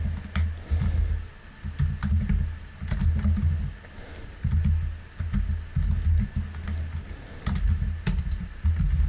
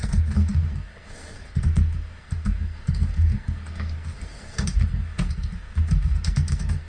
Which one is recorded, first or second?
first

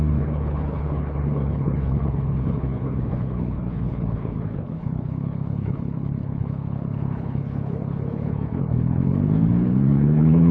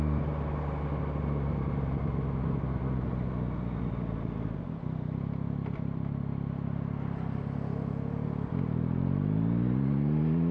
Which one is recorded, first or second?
second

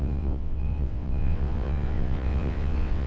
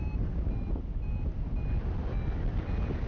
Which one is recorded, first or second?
second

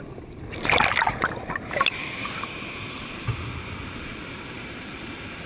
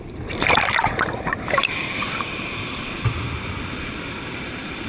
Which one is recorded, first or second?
first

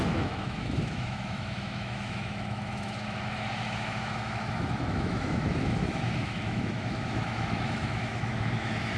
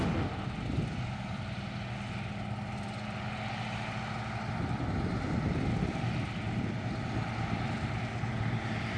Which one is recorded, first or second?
second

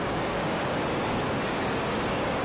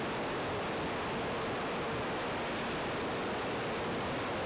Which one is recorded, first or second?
second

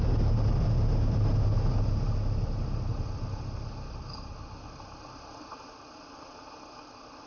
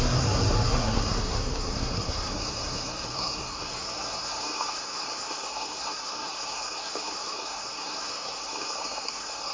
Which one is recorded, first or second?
first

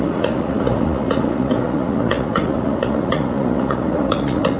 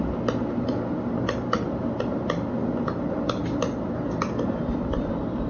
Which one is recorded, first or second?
second